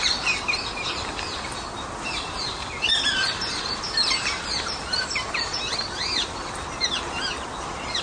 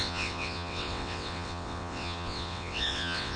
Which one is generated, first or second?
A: second